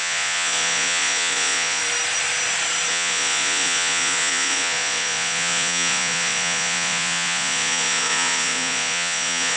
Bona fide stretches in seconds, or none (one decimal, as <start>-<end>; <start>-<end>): 1.8-2.9